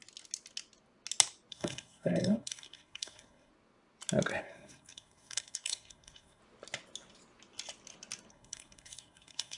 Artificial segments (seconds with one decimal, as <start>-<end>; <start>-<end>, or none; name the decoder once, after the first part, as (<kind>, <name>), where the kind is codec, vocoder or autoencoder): 1.5-3.5 (codec, SNAC); 4.4-6.4; 8.3-9.6